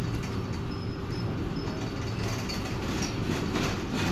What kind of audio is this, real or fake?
real